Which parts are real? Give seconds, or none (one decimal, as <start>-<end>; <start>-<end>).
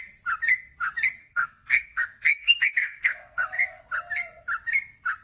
0.0-1.2; 3.8-5.2